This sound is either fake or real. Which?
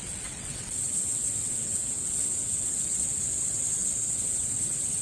fake